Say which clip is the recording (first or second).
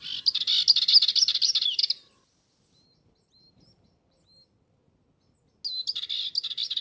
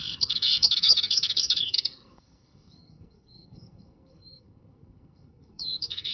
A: first